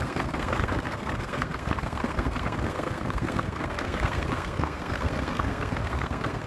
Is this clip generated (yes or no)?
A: yes